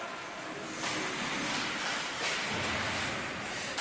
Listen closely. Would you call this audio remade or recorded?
recorded